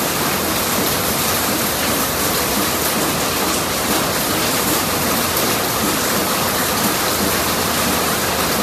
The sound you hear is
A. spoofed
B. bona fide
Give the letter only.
B